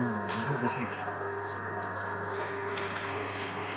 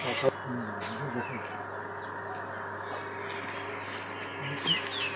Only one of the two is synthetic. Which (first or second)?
first